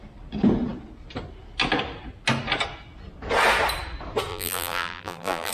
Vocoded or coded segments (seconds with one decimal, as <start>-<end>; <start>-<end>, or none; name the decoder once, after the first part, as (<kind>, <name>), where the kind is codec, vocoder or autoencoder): 4.3-5.5 (vocoder, BigVGAN v2)